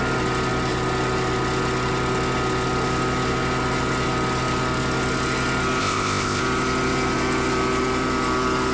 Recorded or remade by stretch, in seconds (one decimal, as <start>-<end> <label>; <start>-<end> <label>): 0.0-5.8 recorded; 5.8-6.4 remade; 6.4-8.7 recorded